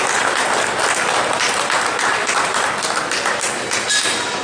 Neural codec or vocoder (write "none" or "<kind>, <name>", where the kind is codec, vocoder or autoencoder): none